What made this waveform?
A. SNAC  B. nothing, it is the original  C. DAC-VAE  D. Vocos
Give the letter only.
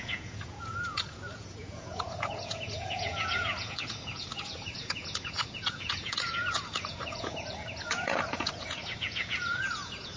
D